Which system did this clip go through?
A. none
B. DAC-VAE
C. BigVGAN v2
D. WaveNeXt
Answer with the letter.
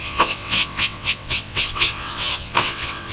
D